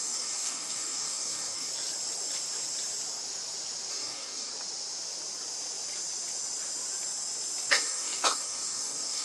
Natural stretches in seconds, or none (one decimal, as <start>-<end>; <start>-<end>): 1.7-3.9; 4.5-7.7